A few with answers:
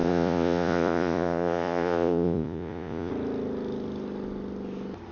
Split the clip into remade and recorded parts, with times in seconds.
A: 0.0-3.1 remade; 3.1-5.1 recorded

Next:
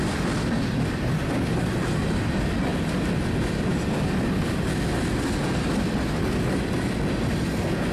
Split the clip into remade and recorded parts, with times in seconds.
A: 0.0-7.9 recorded

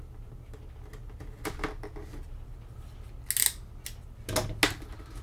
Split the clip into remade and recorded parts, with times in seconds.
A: 0.0-5.2 recorded

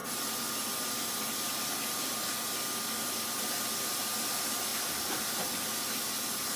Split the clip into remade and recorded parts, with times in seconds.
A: 0.0-6.6 recorded